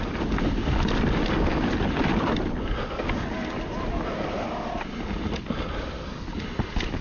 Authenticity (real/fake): real